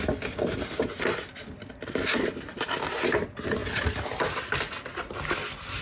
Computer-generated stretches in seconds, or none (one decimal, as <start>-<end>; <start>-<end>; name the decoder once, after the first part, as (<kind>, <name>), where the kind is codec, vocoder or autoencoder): none